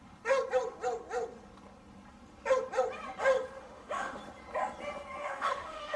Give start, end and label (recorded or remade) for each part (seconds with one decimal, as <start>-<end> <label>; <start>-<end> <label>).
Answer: 0.0-3.6 recorded; 3.6-4.2 remade; 4.2-5.2 recorded; 5.2-6.0 remade